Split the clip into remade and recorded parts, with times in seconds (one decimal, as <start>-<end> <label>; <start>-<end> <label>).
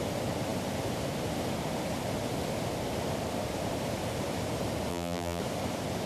0.0-4.9 recorded; 4.9-5.4 remade; 5.4-6.1 recorded